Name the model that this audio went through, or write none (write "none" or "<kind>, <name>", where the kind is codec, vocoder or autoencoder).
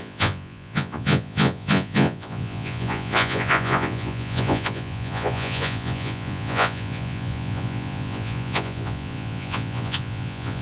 vocoder, Vocos